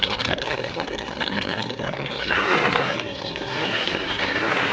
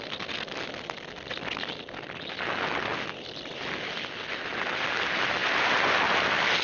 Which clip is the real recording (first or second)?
second